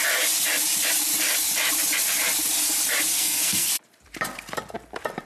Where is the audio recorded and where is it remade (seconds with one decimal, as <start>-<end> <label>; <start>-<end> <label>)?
0.0-3.1 recorded; 3.1-3.7 remade; 3.7-5.3 recorded